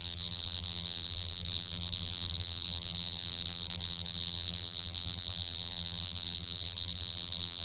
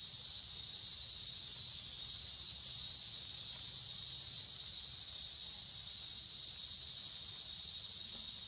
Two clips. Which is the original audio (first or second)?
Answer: second